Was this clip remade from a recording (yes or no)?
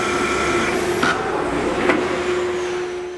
no